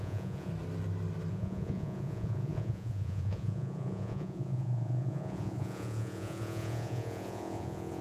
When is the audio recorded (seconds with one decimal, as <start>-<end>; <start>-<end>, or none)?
0.5-1.3